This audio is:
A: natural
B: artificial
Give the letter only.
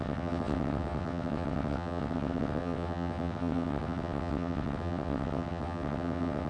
B